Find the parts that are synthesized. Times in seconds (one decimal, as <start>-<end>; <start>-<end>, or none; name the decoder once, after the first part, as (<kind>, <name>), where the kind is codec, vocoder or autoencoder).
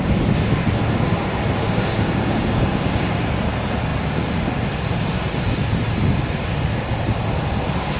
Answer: 1.6-3.2 (codec, DAC)